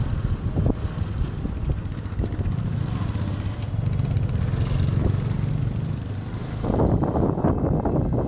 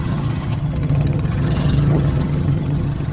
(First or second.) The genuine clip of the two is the first